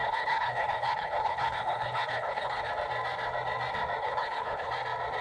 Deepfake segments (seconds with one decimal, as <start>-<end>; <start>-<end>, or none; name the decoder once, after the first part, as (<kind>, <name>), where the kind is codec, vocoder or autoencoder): 0.0-2.7 (codec, HILCodec); 4.0-4.7